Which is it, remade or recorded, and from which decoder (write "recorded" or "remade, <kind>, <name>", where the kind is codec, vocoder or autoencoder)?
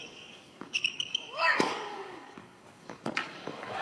remade, codec, DAC